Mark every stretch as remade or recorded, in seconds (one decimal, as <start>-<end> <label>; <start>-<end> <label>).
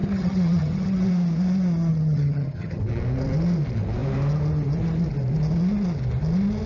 0.0-1.1 remade; 1.1-1.9 recorded; 1.9-2.8 remade; 2.8-6.7 recorded